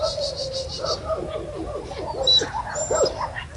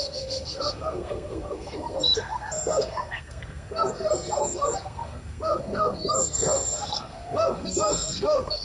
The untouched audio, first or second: first